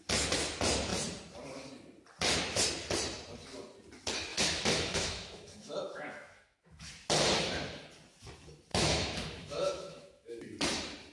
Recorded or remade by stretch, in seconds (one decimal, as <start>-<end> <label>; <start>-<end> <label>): 0.0-4.3 recorded; 4.3-6.9 remade; 6.9-8.7 recorded; 8.7-10.4 remade; 10.4-11.1 recorded